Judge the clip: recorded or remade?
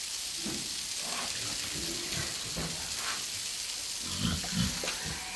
recorded